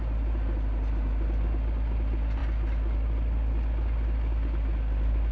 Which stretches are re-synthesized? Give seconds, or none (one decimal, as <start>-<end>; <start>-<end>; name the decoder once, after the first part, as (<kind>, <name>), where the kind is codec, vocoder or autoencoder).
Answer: none

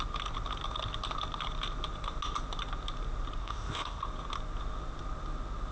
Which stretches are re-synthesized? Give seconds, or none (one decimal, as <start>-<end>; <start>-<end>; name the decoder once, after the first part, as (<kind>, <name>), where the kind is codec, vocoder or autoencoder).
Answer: 3.4-4.0 (codec, ZipCodec)

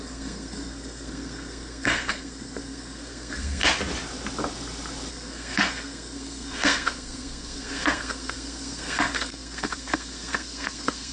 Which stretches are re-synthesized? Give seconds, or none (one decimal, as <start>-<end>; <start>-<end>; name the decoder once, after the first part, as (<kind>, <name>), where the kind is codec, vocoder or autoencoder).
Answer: 0.0-3.6 (codec, SNAC); 5.1-11.1

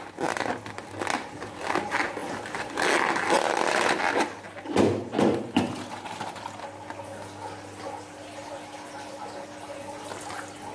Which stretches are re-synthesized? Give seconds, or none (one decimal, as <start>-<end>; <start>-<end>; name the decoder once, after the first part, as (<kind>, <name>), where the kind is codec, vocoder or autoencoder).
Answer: none

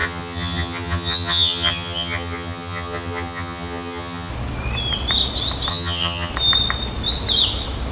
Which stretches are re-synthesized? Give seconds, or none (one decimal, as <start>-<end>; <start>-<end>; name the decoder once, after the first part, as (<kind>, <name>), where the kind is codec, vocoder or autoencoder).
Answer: 0.0-4.3 (vocoder, HiFi-GAN); 5.7-6.3